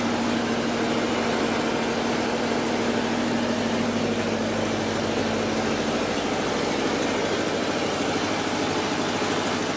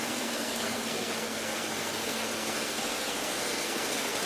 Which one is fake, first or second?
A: second